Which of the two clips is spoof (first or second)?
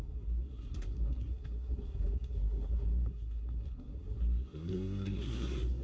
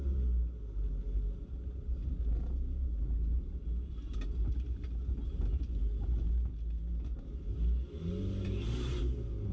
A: first